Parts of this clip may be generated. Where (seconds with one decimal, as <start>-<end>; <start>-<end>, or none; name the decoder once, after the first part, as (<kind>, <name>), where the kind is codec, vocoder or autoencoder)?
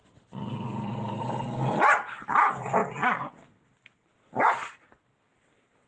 none